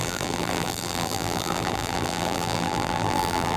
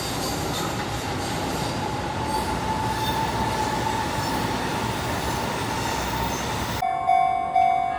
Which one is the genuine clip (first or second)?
second